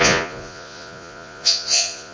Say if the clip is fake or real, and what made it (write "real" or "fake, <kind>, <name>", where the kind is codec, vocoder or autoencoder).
fake, vocoder, Vocos